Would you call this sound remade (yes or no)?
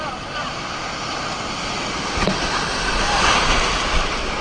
no